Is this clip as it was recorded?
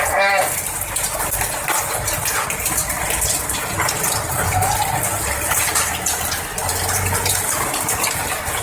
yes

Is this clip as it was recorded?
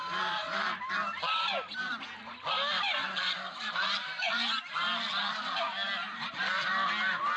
yes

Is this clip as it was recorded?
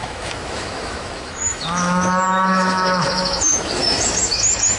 no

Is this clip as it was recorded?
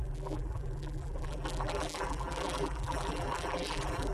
no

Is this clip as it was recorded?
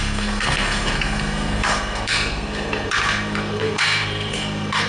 no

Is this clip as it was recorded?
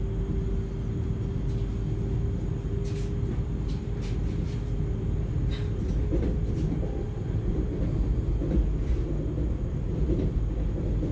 yes